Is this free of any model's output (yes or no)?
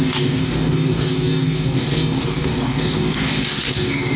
no